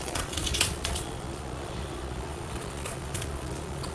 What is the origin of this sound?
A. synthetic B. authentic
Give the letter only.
A